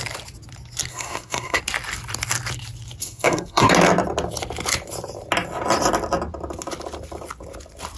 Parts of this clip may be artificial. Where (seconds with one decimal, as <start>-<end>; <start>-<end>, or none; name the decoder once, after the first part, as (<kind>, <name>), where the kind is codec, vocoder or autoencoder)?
0.9-1.6 (codec, SNAC); 3.0-3.7